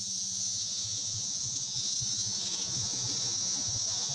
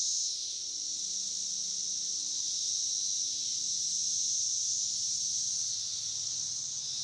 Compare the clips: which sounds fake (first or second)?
first